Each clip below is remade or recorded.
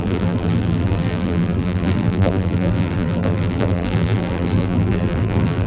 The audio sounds remade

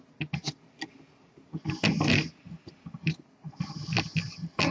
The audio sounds recorded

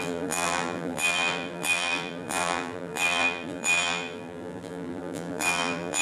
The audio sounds remade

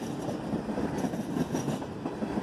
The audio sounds recorded